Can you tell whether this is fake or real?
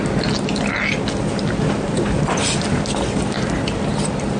real